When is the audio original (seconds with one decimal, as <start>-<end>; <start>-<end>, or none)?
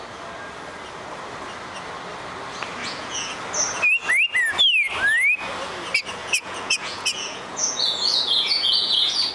0.0-2.8; 3.4-6.2